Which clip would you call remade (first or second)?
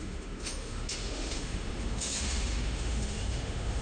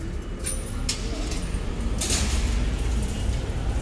first